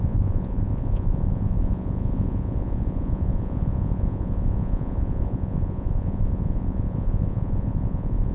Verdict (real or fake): fake